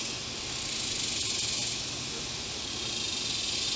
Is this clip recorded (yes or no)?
yes